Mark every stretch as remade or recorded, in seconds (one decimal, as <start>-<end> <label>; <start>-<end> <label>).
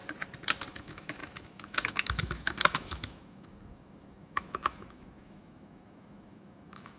0.0-0.7 recorded; 0.7-7.0 remade